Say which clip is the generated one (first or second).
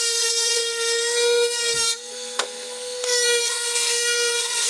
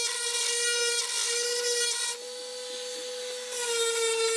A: first